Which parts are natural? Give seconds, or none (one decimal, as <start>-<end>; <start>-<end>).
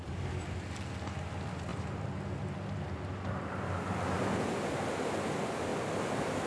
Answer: 0.0-6.5